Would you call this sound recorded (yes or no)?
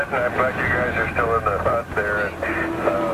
yes